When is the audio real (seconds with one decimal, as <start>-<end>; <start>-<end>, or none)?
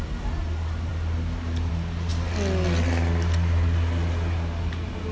0.0-5.1